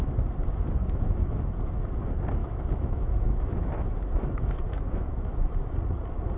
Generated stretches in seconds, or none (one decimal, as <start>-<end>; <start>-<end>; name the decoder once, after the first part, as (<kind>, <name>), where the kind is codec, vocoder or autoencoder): 0.8-1.5 (autoencoder, DAC-VAE); 2.4-5.7